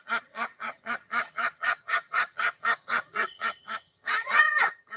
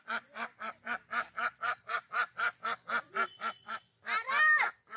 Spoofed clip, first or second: first